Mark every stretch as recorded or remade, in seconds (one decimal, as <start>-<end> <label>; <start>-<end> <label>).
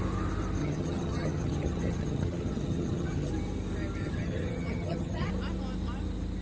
0.0-0.6 recorded; 0.6-3.3 remade; 3.3-4.0 recorded; 4.0-5.3 remade; 5.3-6.4 recorded